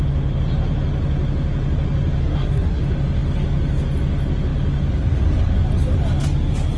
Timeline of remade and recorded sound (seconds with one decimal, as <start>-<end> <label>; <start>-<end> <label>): 0.0-2.2 recorded; 2.2-2.8 remade; 2.8-6.8 recorded